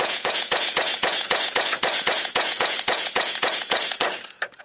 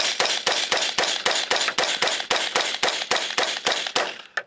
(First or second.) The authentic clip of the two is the second